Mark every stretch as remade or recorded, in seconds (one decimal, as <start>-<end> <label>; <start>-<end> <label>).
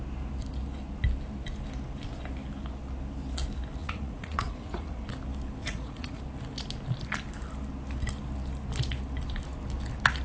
0.0-3.8 recorded; 3.8-5.0 remade; 5.0-5.6 recorded; 5.6-6.2 remade; 6.2-10.2 recorded